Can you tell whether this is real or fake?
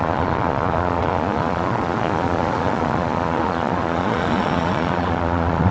fake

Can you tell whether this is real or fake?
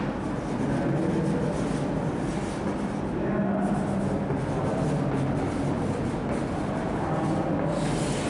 real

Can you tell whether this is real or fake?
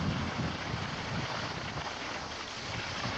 real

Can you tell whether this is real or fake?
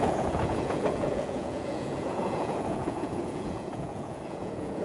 fake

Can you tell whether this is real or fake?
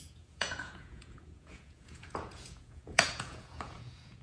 fake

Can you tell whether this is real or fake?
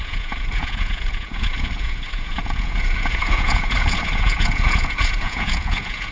fake